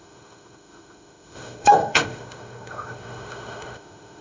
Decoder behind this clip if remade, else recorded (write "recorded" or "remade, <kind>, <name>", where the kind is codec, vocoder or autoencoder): remade, autoencoder, DAC-VAE